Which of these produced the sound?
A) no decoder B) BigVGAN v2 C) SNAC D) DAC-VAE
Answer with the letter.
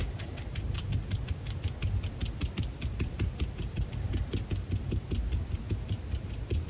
A